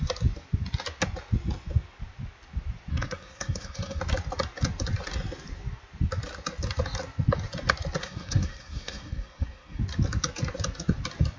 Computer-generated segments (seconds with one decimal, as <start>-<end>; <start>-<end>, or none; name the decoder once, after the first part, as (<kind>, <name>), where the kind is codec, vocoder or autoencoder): 2.9-4.0 (codec, SNAC); 8.0-9.8